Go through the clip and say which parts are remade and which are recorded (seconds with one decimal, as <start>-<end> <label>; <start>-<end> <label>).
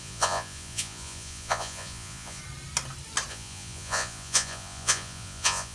0.0-2.4 remade; 2.4-3.3 recorded; 3.3-5.7 remade